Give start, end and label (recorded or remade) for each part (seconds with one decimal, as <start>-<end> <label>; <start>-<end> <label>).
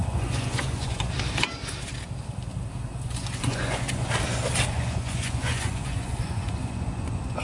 0.0-1.1 remade; 1.1-2.9 recorded; 2.9-4.1 remade; 4.1-4.7 recorded; 4.7-7.4 remade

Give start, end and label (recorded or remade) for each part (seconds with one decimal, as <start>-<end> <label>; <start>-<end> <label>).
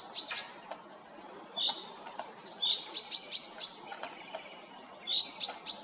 0.0-5.8 recorded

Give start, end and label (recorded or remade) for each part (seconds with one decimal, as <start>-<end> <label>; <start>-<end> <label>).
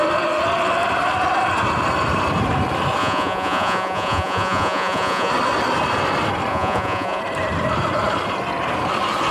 0.0-3.0 recorded; 3.0-5.3 remade; 5.3-6.5 recorded; 6.5-7.2 remade; 7.2-9.3 recorded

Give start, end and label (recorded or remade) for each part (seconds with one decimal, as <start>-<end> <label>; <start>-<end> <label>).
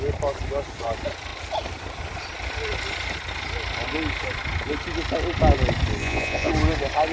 0.0-6.0 recorded; 6.0-6.5 remade; 6.5-7.1 recorded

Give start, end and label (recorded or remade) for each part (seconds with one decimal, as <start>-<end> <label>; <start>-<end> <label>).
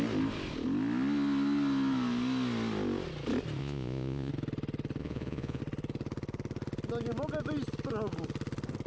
0.0-3.6 recorded; 3.6-4.3 remade; 4.3-5.0 recorded; 5.0-5.6 remade; 5.6-8.9 recorded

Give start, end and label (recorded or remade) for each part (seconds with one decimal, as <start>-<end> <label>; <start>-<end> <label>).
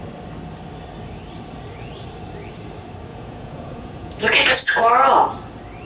0.0-3.1 recorded; 3.1-4.8 remade; 4.8-5.8 recorded